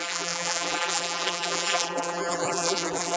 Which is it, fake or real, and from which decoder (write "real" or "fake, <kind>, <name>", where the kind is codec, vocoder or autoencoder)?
fake, vocoder, BigVGAN v2